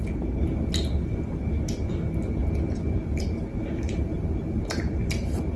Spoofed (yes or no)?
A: no